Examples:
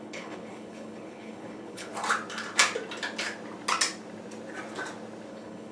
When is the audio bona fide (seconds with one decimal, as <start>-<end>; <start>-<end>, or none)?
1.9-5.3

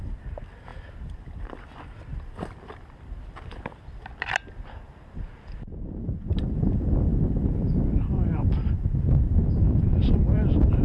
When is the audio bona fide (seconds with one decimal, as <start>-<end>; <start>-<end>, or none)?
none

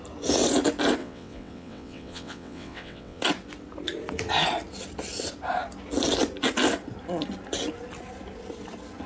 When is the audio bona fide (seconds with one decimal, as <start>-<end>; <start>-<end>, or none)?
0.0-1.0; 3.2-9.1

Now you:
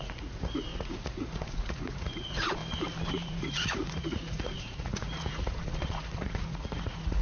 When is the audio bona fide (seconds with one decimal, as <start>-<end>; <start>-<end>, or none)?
2.6-3.1